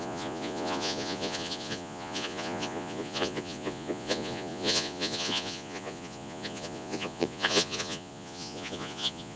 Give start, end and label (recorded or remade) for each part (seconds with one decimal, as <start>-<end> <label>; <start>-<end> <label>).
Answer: 0.0-9.4 remade